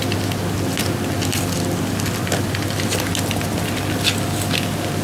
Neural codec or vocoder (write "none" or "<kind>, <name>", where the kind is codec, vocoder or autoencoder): none